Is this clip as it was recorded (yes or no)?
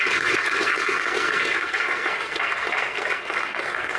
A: no